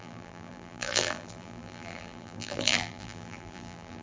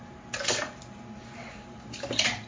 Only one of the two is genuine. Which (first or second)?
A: second